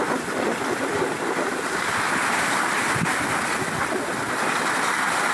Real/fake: real